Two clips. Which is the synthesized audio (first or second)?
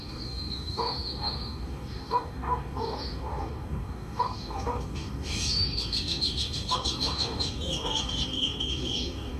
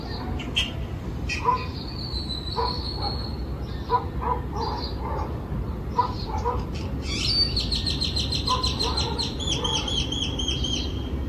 first